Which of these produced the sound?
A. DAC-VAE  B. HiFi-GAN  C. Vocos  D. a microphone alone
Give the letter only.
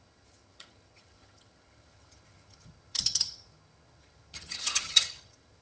B